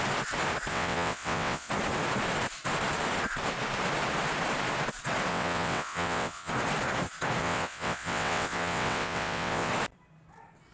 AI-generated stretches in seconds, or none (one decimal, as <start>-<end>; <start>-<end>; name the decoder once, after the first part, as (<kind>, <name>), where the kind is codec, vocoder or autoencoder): 0.7-1.7 (vocoder, WaveNeXt); 5.3-6.5; 7.4-9.7